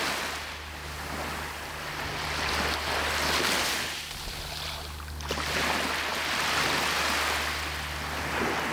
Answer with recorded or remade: recorded